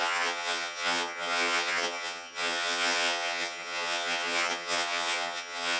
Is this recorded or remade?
remade